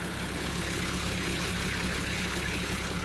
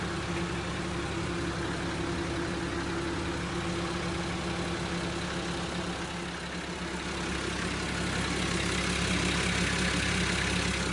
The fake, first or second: first